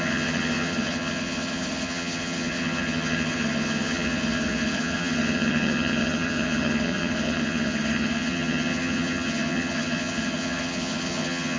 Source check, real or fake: fake